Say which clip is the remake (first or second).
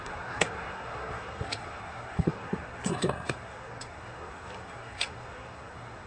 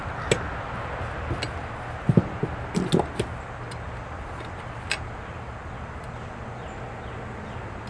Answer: first